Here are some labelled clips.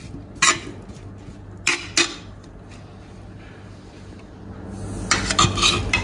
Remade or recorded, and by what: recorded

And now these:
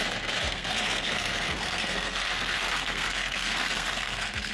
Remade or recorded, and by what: remade, codec, SNAC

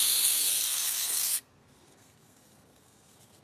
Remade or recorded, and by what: remade, codec, SNAC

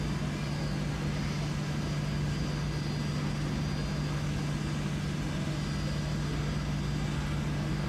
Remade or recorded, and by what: recorded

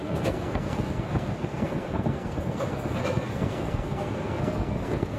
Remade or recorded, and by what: remade, codec, SNAC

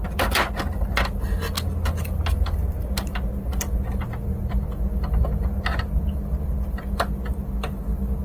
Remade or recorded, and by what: recorded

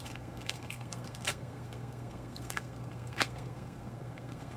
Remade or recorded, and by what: remade, codec, SNAC